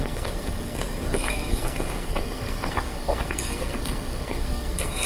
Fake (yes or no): yes